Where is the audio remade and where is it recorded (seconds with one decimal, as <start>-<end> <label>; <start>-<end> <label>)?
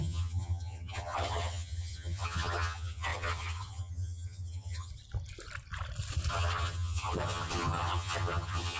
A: 0.0-4.9 remade; 4.9-6.3 recorded; 6.3-8.8 remade